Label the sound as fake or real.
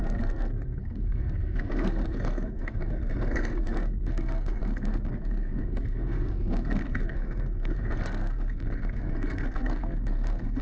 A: fake